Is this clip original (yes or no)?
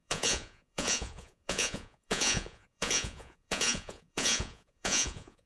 no